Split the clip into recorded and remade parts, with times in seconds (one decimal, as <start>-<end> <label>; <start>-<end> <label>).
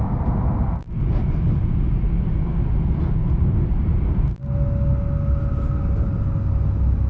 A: 0.0-3.2 recorded; 3.2-4.2 remade; 4.2-7.1 recorded